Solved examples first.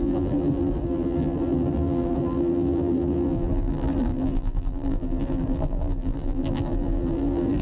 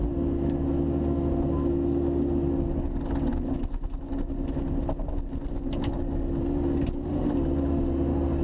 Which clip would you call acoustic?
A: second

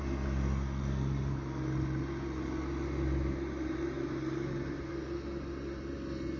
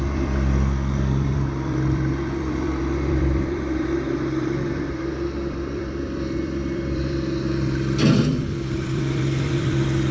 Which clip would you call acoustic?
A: first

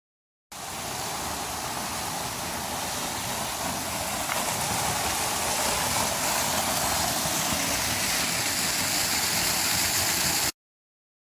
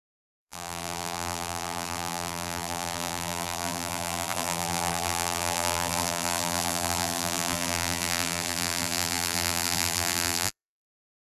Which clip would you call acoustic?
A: first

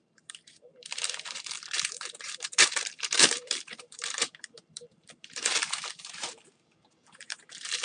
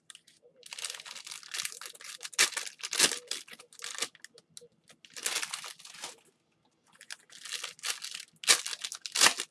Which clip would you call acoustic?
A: second